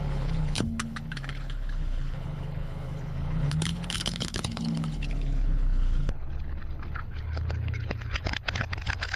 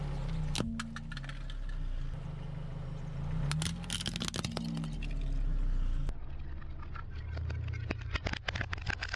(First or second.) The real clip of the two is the second